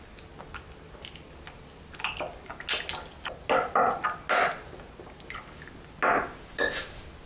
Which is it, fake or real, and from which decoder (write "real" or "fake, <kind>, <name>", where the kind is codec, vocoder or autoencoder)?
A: real